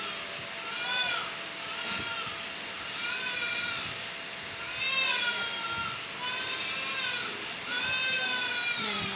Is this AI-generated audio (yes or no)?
no